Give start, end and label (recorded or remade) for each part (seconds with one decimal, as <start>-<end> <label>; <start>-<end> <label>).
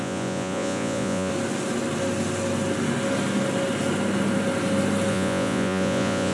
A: 0.0-1.3 remade; 1.3-5.1 recorded; 5.1-6.3 remade